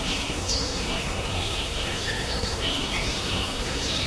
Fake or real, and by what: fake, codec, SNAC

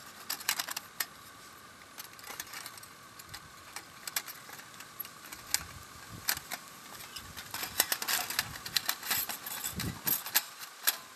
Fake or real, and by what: real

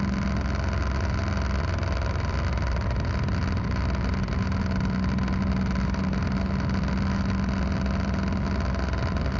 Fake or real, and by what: real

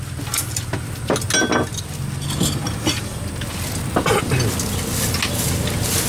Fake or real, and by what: real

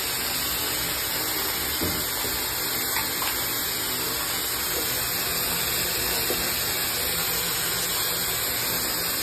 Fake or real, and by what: real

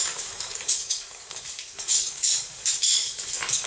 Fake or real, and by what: fake, codec, DAC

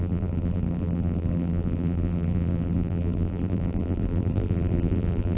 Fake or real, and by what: fake, vocoder, BigVGAN v2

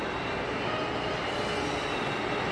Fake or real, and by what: real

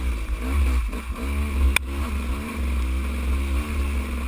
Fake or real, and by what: real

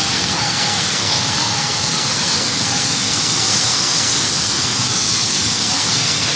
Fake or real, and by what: fake, codec, SNAC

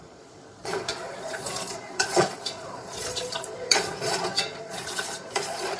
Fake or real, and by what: fake, vocoder, Vocos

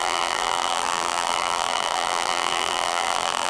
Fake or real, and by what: fake, vocoder, BigVGAN v2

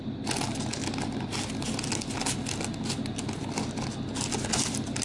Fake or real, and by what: real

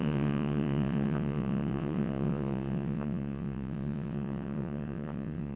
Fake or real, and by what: fake, vocoder, WaveNeXt